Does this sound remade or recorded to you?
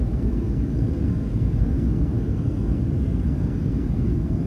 remade